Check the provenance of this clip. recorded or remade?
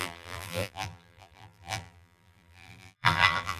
remade